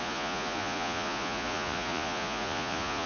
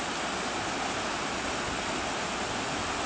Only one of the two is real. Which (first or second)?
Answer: second